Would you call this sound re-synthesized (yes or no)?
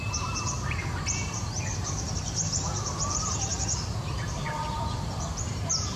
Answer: yes